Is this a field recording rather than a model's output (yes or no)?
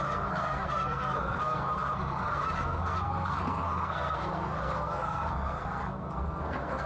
no